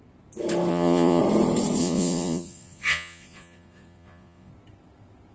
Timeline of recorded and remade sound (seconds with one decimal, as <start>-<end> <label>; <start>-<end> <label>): 0.0-0.7 recorded; 0.7-1.2 remade; 1.2-1.8 recorded; 1.8-4.5 remade; 4.5-5.3 recorded